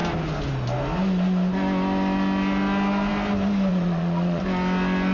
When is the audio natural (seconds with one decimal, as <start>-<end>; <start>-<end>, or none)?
0.0-3.7; 4.4-5.1